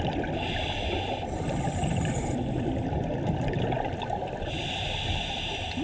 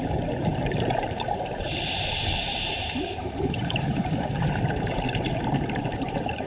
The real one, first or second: first